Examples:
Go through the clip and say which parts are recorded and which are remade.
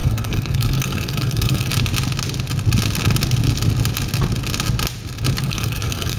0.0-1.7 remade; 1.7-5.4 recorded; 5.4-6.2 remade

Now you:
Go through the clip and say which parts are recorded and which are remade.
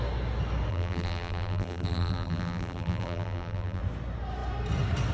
0.0-0.7 recorded; 0.7-3.8 remade; 3.8-5.1 recorded